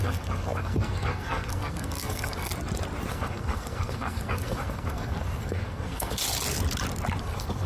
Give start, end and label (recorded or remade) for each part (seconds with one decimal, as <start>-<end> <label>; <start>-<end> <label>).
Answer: 0.0-2.5 remade; 2.5-3.1 recorded; 3.1-6.2 remade; 6.2-7.2 recorded; 7.2-7.7 remade